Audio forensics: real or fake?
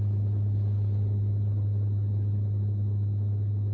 real